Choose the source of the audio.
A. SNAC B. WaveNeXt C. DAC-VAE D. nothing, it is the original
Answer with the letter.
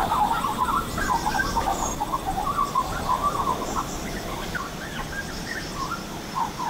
D